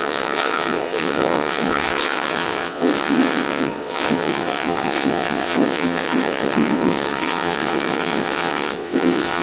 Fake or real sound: fake